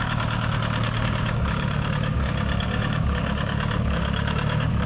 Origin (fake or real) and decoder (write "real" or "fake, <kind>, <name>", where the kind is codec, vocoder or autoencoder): fake, codec, DAC